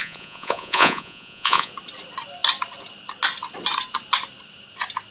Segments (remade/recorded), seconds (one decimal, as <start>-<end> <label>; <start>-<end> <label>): 0.0-1.7 remade; 1.7-5.1 recorded